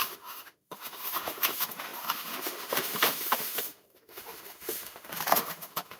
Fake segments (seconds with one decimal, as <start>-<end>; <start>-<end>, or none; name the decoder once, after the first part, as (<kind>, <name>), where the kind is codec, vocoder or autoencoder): 0.0-6.0 (autoencoder, DAC-VAE)